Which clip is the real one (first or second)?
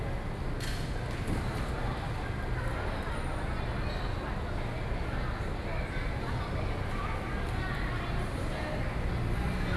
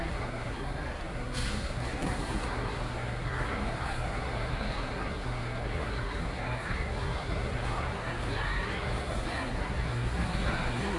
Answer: first